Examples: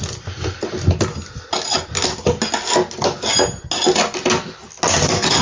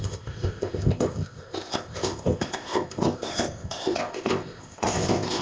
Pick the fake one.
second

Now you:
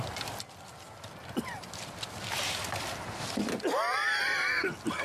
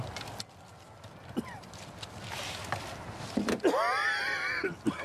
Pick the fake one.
first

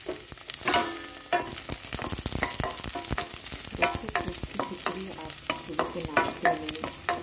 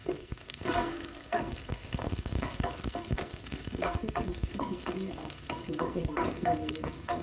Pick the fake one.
second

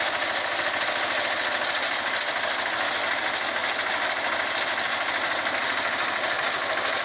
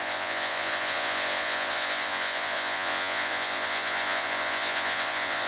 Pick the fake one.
second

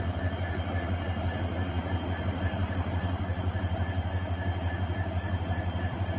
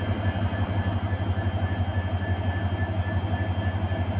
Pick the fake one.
first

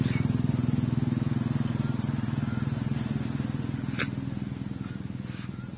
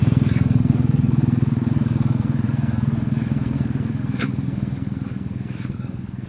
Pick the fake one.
second